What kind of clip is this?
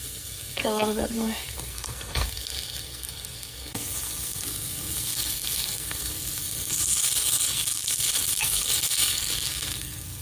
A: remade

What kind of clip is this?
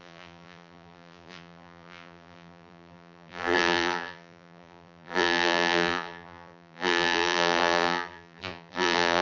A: remade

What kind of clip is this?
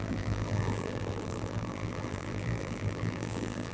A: remade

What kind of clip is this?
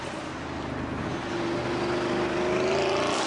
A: recorded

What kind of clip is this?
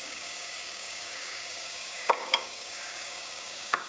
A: remade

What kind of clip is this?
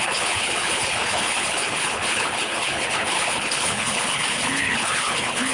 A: remade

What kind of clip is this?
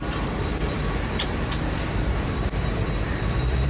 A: remade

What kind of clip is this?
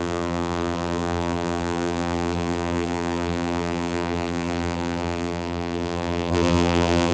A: remade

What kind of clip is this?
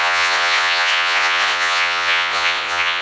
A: remade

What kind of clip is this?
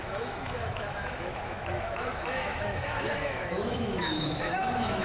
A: remade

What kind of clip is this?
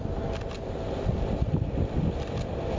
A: remade